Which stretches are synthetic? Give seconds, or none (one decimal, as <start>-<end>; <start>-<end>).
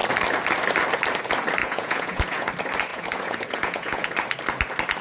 1.6-2.5; 2.9-4.1